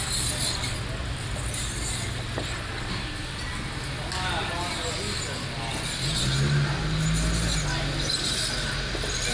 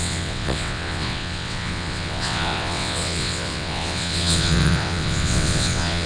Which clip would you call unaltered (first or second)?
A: first